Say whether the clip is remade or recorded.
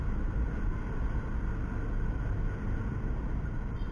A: recorded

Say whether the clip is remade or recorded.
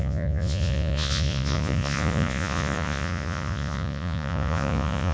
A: remade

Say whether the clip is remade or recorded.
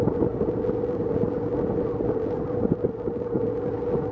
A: recorded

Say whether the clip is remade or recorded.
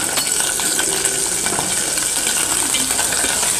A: recorded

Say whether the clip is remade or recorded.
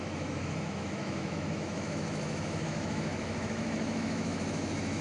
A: remade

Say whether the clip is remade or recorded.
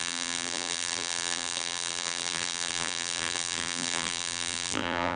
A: remade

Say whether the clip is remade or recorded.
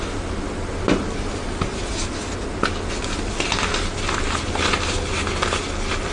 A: recorded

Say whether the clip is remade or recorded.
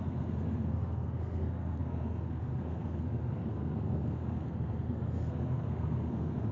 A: remade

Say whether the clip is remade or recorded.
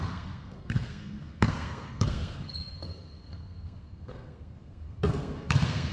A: remade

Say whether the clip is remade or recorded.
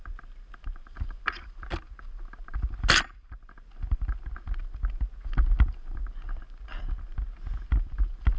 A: recorded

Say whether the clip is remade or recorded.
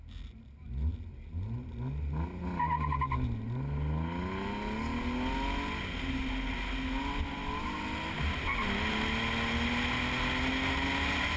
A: recorded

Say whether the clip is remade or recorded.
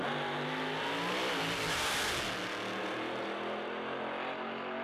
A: recorded